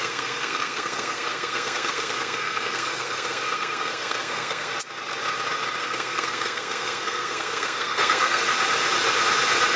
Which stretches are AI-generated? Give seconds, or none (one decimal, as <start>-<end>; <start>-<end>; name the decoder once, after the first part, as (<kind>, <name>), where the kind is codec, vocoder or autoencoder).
0.0-4.7 (codec, SNAC); 5.8-8.4